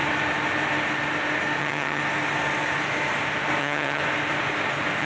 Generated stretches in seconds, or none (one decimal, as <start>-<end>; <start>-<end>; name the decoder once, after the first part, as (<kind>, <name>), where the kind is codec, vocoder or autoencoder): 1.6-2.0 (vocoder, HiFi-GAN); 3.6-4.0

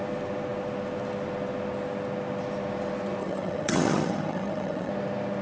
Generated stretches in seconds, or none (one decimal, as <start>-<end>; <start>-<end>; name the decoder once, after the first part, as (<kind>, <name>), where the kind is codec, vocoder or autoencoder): 3.2-4.9 (vocoder, HiFi-GAN)

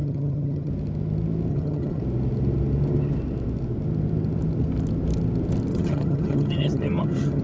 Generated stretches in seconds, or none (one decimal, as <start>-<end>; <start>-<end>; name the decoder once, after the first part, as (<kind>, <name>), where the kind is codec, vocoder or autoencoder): 0.0-0.7 (vocoder, HiFi-GAN); 1.5-2.0; 5.7-7.4

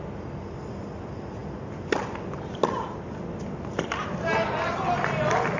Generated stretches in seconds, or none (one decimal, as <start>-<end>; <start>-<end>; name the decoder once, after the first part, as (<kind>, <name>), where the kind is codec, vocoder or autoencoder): none